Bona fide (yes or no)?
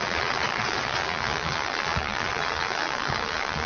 no